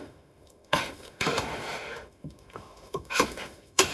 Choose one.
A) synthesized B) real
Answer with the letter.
A